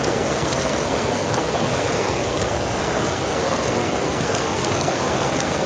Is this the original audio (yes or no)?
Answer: no